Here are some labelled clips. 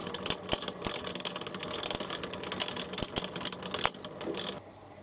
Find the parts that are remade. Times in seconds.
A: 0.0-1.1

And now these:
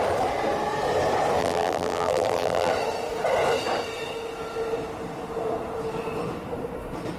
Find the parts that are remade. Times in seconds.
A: 1.4-2.7

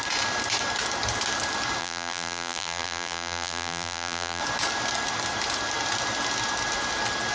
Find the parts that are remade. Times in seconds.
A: 1.8-4.4

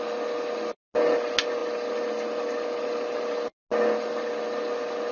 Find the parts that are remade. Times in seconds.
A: none

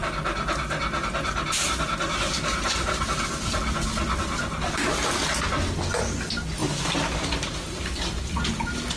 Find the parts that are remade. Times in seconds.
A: 6.6-8.5

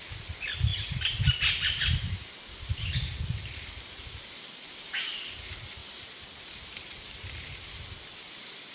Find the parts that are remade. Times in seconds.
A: 0.7-5.0; 5.8-7.7